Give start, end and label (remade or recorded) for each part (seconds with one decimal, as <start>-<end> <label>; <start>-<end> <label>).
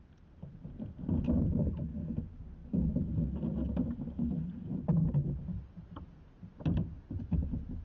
0.0-1.6 recorded; 1.6-2.2 remade; 2.2-7.8 recorded